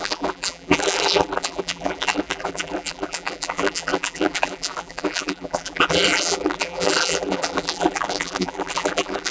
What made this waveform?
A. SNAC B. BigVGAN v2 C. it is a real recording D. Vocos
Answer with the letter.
B